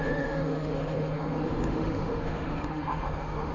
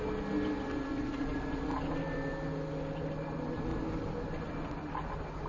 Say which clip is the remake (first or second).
first